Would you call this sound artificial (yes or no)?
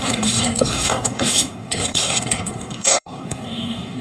yes